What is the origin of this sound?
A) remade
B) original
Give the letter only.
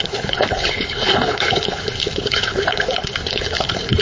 A